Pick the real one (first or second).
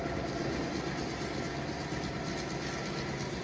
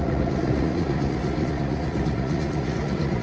first